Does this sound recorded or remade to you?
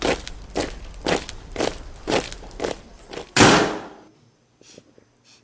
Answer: recorded